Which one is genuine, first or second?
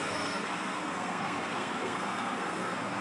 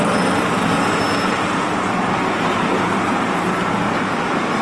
second